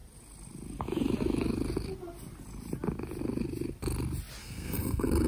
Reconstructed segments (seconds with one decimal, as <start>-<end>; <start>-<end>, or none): 4.4-5.3